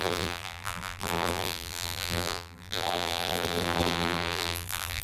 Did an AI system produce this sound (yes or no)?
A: yes